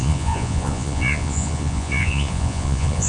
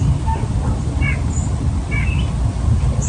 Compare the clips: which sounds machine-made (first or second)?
first